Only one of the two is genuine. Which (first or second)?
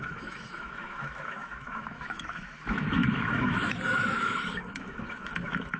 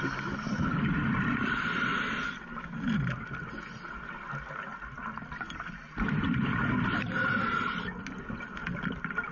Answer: second